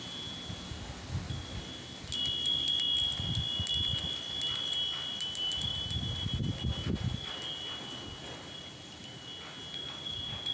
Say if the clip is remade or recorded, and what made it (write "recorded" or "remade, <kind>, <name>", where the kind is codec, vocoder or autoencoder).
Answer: recorded